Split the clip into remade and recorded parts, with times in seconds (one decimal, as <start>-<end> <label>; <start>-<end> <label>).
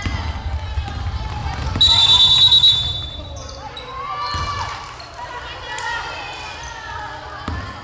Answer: 0.0-7.8 recorded